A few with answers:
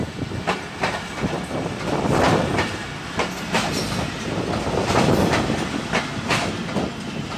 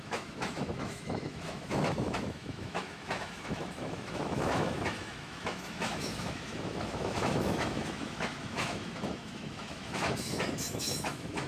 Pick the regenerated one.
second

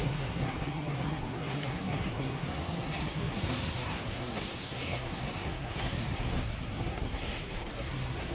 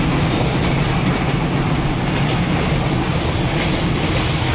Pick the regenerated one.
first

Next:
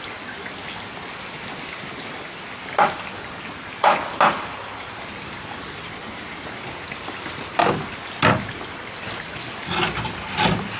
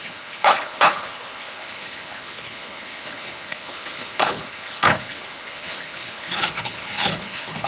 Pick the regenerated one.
second